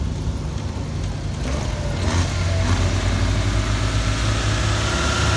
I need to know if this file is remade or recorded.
recorded